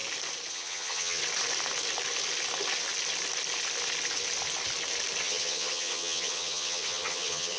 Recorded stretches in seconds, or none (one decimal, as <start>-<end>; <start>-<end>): 0.0-0.5; 1.2-5.2